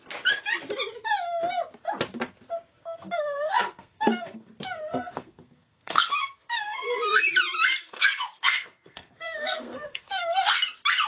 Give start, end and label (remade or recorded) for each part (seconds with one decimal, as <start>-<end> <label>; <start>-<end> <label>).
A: 0.0-2.7 recorded; 2.7-4.5 remade; 4.5-4.9 recorded; 4.9-7.2 remade; 7.2-7.8 recorded; 7.8-10.5 remade; 10.5-11.1 recorded